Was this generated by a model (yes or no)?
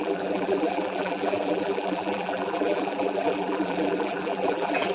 yes